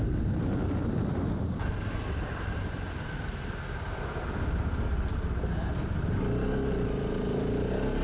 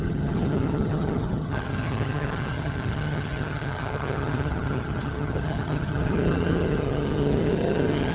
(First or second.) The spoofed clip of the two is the second